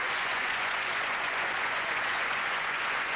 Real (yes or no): no